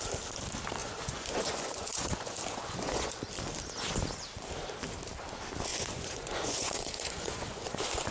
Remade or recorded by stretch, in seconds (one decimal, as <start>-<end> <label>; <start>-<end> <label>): 0.0-0.8 recorded; 0.8-3.2 remade; 3.2-5.7 recorded; 5.7-8.1 remade